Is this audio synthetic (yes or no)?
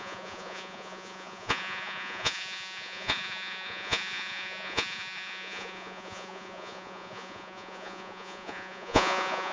yes